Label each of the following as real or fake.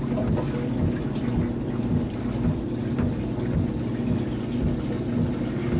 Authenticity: real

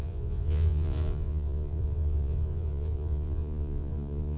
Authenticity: fake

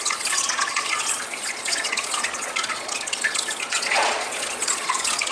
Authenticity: fake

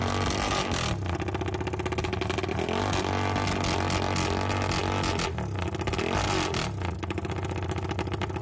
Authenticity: real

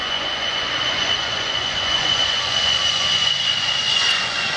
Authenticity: fake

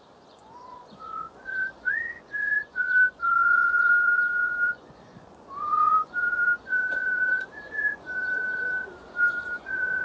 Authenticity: fake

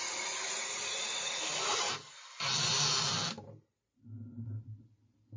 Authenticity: real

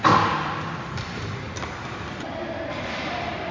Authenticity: real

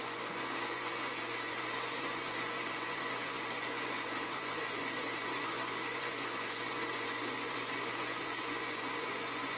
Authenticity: fake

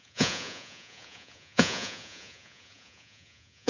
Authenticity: fake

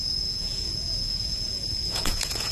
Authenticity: fake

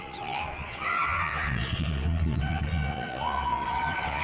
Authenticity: fake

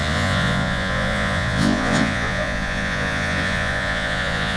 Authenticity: fake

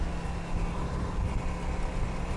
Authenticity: real